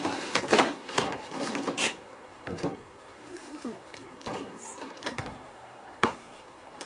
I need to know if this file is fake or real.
fake